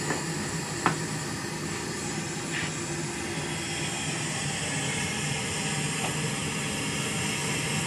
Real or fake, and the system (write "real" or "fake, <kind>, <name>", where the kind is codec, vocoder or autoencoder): real